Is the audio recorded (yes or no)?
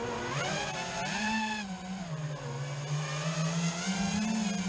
yes